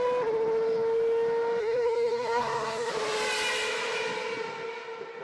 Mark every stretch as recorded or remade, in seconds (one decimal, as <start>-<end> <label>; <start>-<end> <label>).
0.0-1.6 recorded; 1.6-2.9 remade; 2.9-5.2 recorded